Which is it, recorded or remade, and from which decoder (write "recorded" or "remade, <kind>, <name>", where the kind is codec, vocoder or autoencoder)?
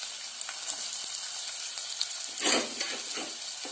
recorded